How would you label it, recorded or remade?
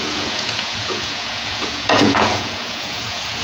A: remade